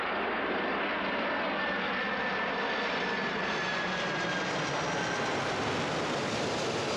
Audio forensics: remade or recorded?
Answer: recorded